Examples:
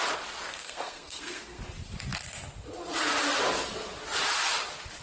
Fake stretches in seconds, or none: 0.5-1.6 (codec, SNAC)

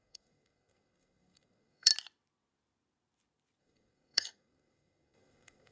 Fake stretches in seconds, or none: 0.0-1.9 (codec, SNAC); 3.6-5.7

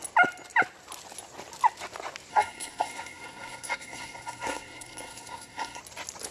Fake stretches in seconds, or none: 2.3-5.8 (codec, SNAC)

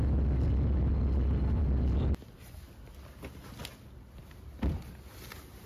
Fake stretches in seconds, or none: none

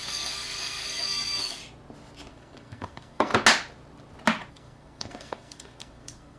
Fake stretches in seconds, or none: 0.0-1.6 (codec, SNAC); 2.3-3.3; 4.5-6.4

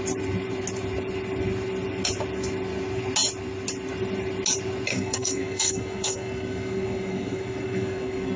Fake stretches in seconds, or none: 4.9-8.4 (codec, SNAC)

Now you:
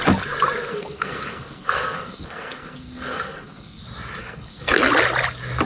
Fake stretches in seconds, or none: 0.7-3.8 (codec, SNAC); 4.2-4.9